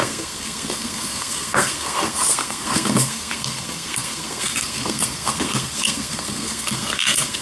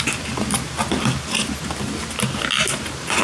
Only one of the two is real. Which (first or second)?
second